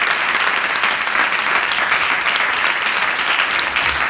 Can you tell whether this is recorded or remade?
recorded